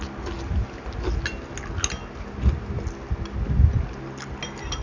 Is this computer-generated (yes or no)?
no